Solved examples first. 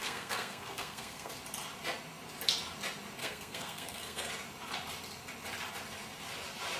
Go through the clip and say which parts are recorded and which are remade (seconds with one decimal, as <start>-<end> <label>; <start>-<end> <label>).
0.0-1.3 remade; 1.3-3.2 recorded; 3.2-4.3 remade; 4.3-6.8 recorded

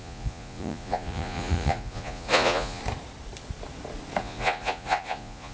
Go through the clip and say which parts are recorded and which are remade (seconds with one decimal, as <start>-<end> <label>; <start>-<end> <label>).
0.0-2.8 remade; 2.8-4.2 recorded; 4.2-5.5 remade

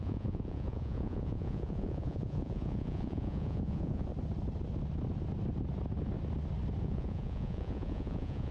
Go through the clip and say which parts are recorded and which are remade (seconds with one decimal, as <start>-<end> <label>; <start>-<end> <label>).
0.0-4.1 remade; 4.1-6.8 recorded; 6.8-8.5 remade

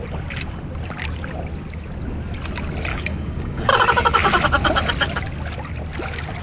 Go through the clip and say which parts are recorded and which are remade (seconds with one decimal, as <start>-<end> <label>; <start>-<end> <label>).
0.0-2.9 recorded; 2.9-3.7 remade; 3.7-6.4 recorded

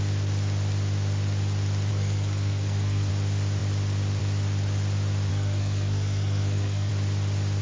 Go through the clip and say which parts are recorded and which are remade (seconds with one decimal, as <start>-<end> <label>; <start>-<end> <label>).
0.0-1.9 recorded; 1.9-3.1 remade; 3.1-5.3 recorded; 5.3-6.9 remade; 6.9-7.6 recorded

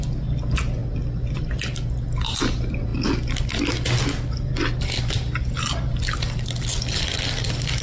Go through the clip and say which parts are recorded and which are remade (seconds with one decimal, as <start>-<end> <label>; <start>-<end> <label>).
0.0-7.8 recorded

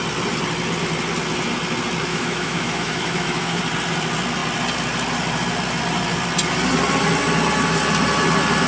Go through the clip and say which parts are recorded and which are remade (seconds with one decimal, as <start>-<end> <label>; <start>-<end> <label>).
0.0-2.1 recorded; 2.1-3.6 remade; 3.6-8.7 recorded

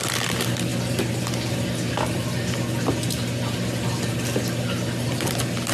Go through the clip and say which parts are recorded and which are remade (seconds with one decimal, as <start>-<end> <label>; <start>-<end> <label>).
0.0-5.7 recorded